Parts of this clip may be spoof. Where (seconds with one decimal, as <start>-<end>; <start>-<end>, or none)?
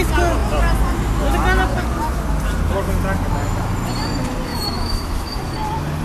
4.5-5.4